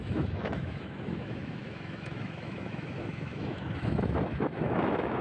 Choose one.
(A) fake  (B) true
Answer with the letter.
A